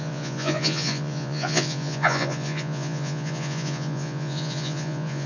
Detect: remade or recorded remade